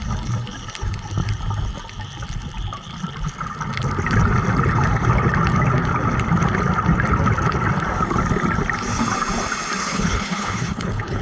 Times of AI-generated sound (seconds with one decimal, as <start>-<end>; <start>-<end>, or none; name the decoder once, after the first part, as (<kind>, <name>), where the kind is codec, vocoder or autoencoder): 9.8-11.2 (codec, HILCodec)